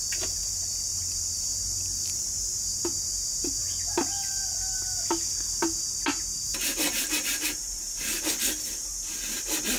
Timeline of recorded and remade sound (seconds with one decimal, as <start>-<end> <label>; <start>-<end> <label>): 0.0-0.9 recorded; 0.9-3.6 remade; 3.6-6.1 recorded; 6.1-8.2 remade; 8.2-9.8 recorded

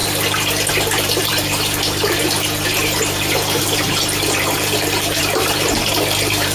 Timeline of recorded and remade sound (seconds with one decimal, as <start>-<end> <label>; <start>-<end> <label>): 0.0-0.7 recorded; 0.7-6.5 remade